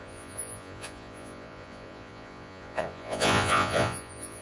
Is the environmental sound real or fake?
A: fake